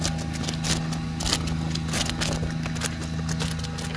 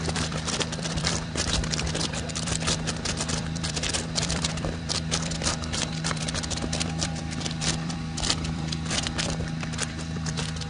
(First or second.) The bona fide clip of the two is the first